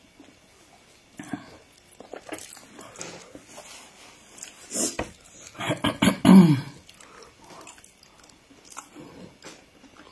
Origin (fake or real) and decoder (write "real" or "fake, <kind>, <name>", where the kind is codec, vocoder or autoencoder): real